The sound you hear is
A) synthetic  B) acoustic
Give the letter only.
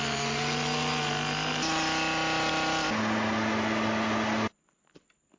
B